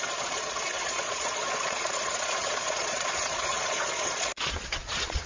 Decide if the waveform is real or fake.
fake